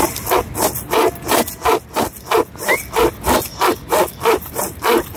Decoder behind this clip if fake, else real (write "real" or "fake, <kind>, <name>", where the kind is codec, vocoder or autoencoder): real